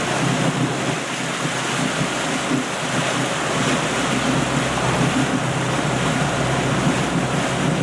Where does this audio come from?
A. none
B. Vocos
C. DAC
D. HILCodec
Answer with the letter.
A